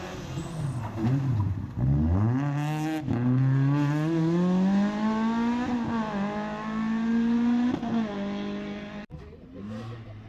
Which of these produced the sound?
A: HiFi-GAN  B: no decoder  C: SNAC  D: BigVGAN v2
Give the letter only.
B